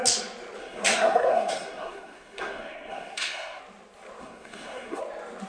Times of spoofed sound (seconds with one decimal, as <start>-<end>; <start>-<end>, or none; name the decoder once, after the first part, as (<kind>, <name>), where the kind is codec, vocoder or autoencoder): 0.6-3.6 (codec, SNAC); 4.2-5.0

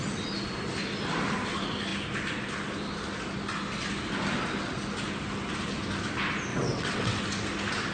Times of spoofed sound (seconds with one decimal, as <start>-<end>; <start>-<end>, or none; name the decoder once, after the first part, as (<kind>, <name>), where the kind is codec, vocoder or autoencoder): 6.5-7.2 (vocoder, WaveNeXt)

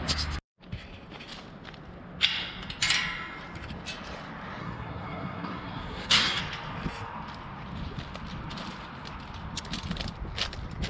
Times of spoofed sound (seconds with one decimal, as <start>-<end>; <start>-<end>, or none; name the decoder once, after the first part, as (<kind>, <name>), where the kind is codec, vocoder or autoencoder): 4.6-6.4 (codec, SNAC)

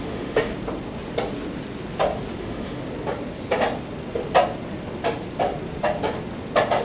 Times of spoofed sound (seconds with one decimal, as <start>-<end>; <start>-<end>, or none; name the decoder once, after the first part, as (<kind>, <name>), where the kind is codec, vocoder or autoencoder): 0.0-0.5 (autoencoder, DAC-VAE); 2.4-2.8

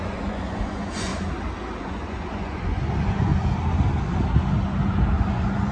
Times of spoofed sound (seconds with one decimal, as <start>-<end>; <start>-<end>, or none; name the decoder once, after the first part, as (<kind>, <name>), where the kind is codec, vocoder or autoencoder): 0.0-1.1 (vocoder, Vocos); 1.8-3.3; 5.3-5.7

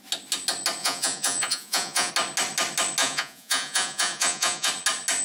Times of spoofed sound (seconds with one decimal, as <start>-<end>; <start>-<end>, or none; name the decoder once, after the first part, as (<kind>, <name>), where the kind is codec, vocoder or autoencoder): 0.8-2.1 (vocoder, Vocos); 3.0-4.7

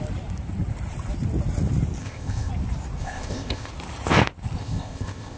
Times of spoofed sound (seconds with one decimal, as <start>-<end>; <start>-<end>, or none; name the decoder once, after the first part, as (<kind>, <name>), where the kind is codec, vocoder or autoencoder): 2.0-2.5 (codec, ZipCodec); 3.0-3.7; 4.6-5.4